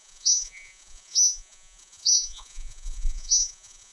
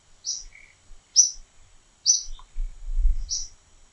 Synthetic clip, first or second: first